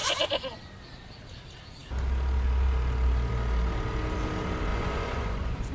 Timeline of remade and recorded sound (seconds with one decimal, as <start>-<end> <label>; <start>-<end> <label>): 0.0-0.6 remade; 0.6-4.7 recorded; 4.7-5.7 remade